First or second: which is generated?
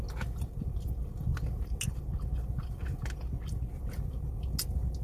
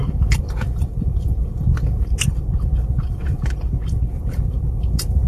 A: second